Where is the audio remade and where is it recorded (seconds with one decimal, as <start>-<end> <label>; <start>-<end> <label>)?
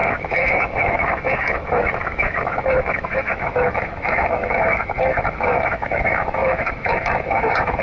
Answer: 0.0-7.8 remade